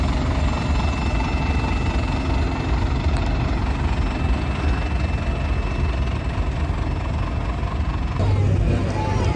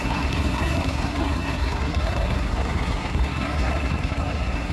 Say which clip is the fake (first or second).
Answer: second